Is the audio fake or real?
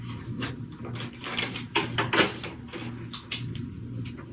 real